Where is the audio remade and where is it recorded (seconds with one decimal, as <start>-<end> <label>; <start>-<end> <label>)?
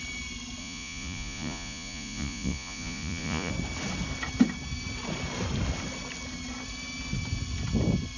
0.0-0.6 recorded; 0.6-3.5 remade; 3.5-8.2 recorded